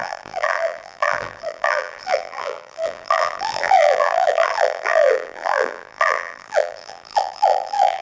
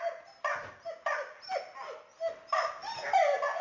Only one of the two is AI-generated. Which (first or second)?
first